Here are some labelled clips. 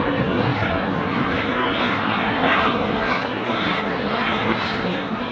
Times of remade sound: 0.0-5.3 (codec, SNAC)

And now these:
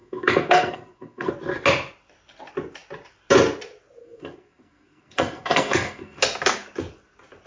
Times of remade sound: 0.0-1.3 (codec, SNAC); 4.0-6.2

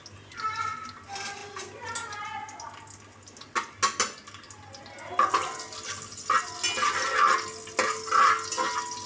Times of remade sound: none

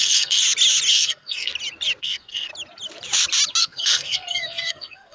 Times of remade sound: 0.0-0.4 (codec, SNAC); 0.9-1.5; 2.0-2.5; 3.6-5.1

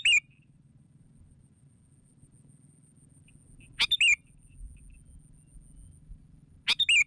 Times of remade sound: none

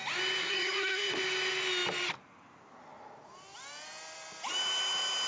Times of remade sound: 0.4-1.1 (codec, SNAC)

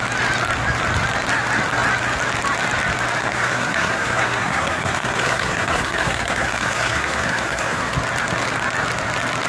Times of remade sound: 3.2-7.9 (codec, SNAC)